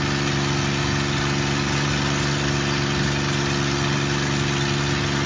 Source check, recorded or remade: recorded